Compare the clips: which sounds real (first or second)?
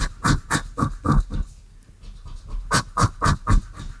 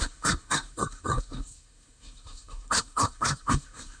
first